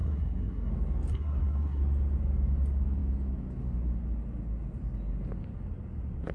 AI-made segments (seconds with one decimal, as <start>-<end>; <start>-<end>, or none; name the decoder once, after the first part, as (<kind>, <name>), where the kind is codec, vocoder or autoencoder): 0.0-0.7 (codec, SNAC); 1.1-1.8